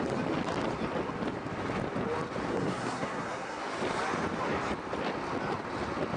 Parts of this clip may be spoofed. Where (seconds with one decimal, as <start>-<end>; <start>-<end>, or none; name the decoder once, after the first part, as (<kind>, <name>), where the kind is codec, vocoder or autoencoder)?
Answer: 2.5-3.6 (codec, SNAC)